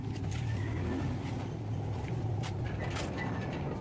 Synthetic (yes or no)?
no